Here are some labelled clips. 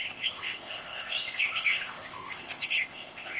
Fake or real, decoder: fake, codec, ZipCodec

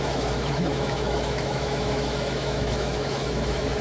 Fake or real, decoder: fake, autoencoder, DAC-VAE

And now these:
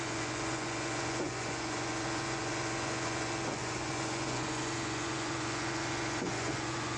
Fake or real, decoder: fake, vocoder, Vocos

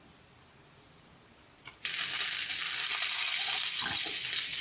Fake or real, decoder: real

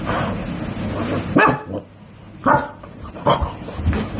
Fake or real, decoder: real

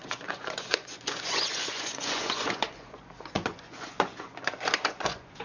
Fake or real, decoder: fake, vocoder, Vocos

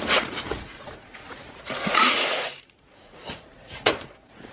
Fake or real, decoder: fake, vocoder, Vocos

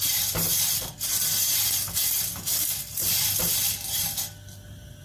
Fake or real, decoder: real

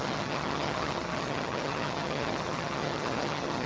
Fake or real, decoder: fake, vocoder, HiFi-GAN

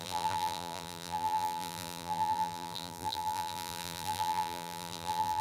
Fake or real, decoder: fake, vocoder, BigVGAN v2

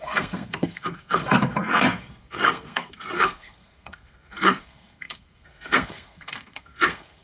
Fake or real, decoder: fake, codec, SNAC